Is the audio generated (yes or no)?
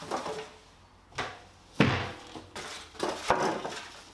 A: no